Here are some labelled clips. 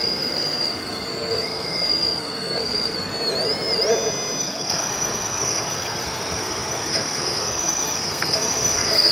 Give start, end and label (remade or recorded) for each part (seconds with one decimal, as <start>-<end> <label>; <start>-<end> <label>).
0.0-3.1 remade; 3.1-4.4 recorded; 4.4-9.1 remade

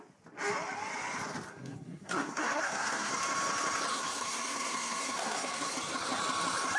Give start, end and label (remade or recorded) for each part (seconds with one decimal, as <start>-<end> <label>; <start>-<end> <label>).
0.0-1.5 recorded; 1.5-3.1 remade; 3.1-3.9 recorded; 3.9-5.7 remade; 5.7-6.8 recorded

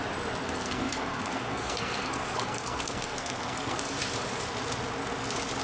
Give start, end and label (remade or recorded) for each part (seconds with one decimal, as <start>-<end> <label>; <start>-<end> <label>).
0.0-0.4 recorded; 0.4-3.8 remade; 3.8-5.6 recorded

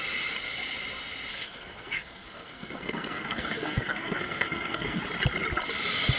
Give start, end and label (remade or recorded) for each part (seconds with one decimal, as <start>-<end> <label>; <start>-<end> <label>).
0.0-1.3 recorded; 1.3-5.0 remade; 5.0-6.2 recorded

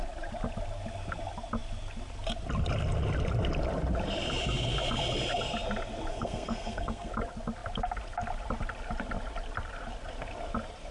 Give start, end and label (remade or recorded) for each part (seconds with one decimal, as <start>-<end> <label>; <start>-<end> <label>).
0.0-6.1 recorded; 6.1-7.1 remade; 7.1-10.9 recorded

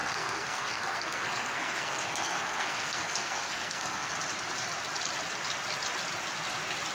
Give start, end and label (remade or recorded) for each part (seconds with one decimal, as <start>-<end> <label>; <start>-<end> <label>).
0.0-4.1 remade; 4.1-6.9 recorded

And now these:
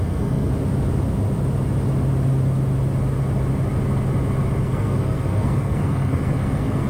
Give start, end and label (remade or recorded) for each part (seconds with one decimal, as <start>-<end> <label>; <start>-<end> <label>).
0.0-0.5 remade; 0.5-4.6 recorded; 4.6-6.9 remade